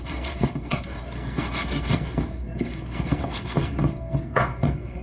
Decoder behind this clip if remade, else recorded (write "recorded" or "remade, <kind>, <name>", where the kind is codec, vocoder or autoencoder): remade, codec, SNAC